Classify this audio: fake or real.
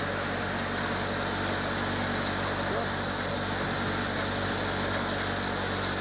real